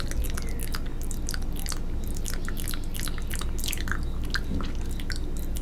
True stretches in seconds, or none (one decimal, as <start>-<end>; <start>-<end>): 0.0-5.6